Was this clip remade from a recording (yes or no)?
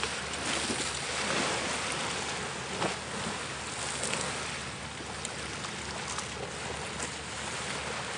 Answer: no